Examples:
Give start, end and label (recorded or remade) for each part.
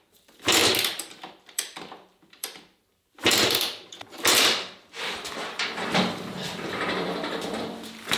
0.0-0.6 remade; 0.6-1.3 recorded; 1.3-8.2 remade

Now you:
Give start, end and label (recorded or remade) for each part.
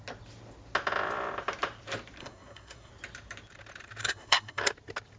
0.0-2.2 recorded; 2.2-2.9 remade; 2.9-4.0 recorded; 4.0-4.6 remade; 4.6-5.2 recorded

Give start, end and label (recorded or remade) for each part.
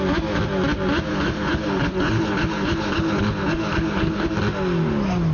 0.0-1.1 recorded; 1.1-4.3 remade; 4.3-5.3 recorded